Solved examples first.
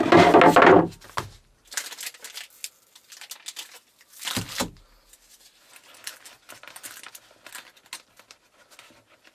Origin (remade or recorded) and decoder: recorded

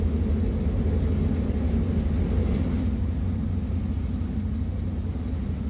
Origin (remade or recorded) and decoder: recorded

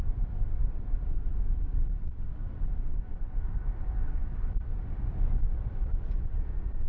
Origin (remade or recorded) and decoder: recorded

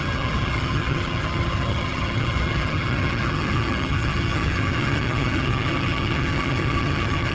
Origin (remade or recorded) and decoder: remade, vocoder, HiFi-GAN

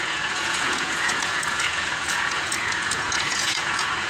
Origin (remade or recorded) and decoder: remade, vocoder, Vocos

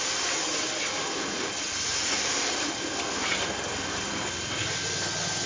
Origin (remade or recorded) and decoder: recorded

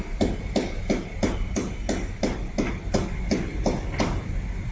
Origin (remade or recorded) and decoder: recorded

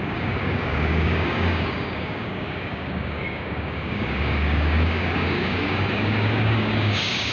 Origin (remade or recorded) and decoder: remade, codec, DAC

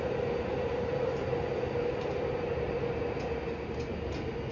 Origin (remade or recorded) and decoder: recorded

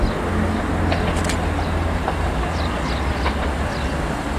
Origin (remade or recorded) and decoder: recorded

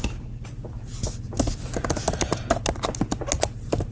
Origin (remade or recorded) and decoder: recorded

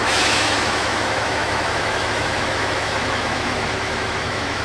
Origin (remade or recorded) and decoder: remade, autoencoder, DAC-VAE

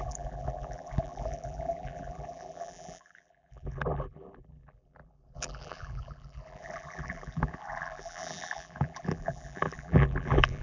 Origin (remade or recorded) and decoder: remade, vocoder, BigVGAN v2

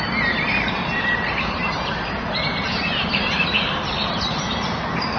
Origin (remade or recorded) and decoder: remade, vocoder, BigVGAN v2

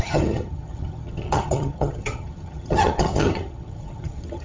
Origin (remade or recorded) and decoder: remade, vocoder, HiFi-GAN